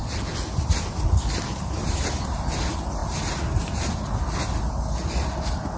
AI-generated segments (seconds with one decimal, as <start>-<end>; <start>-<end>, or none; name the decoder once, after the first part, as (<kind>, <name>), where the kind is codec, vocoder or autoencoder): none